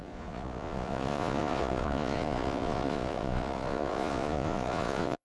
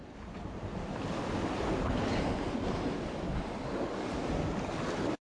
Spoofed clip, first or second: first